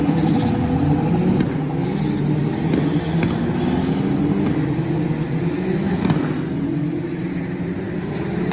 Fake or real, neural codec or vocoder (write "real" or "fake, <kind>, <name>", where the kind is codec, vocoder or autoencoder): real